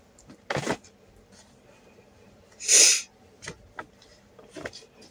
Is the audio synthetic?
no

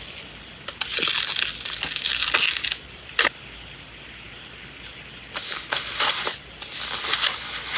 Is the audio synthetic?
no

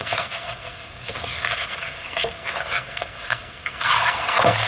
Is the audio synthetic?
yes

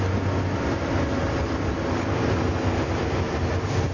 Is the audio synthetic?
no